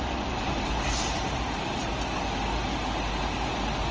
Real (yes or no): yes